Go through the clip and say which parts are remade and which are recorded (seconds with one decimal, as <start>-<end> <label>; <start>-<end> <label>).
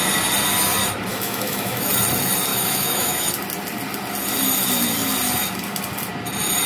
0.0-1.1 recorded; 1.1-1.9 remade; 1.9-2.5 recorded; 2.5-3.3 remade; 3.3-6.7 recorded